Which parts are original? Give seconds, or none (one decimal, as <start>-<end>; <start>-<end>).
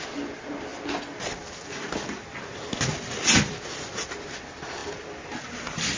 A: 0.0-6.0